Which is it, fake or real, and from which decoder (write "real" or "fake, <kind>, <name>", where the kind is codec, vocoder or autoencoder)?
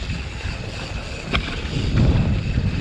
fake, vocoder, BigVGAN v2